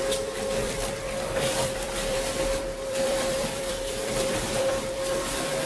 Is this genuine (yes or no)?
no